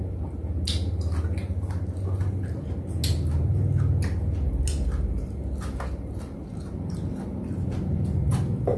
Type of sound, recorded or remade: recorded